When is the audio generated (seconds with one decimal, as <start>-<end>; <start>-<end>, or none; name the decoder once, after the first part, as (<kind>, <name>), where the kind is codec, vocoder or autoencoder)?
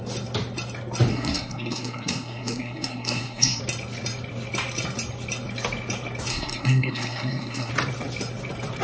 1.1-3.6 (codec, SNAC); 6.3-7.7